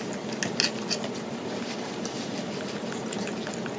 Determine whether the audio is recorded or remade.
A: recorded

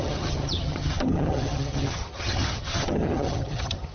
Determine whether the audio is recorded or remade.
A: remade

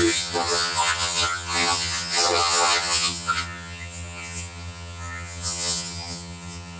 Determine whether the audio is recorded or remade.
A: remade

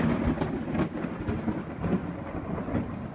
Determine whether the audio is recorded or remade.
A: recorded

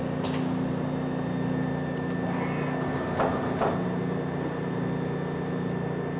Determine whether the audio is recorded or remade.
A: recorded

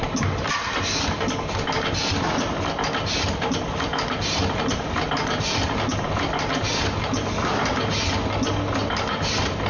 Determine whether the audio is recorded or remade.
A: recorded